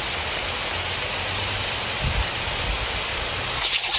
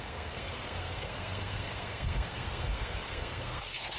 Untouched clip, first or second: first